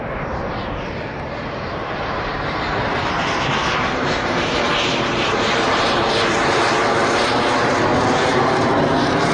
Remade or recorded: remade